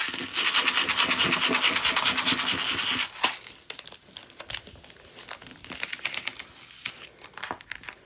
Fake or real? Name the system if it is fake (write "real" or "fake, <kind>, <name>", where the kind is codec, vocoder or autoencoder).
real